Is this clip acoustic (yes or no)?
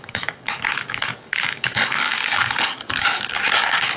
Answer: no